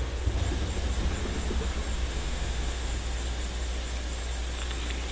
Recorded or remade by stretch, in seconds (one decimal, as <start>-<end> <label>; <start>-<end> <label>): 0.0-2.1 recorded; 2.1-2.9 remade; 2.9-5.1 recorded